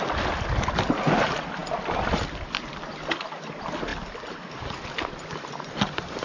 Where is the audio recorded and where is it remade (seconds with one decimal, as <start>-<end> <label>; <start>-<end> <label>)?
0.0-6.2 recorded